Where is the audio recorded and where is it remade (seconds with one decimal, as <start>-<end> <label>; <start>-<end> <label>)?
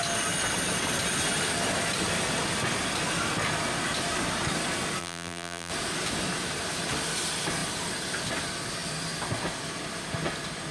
0.0-5.0 recorded; 5.0-5.7 remade; 5.7-10.7 recorded